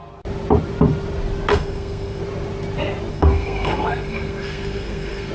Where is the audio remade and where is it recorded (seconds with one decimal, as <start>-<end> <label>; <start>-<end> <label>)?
0.0-1.5 recorded; 1.5-2.2 remade; 2.2-3.1 recorded; 3.1-5.3 remade